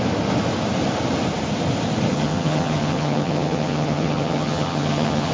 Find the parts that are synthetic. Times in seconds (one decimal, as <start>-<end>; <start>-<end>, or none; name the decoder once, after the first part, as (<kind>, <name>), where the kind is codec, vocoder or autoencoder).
2.1-5.3 (vocoder, HiFi-GAN)